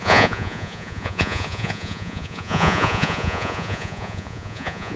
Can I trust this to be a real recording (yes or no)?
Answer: no